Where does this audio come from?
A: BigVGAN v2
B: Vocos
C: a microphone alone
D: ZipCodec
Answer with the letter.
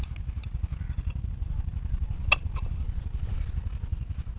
C